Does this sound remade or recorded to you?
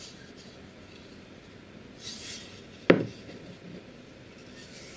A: recorded